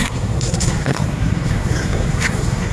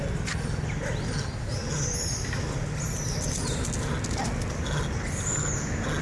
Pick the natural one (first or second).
second